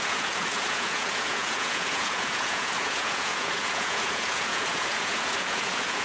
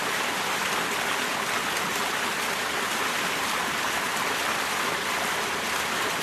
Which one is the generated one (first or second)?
first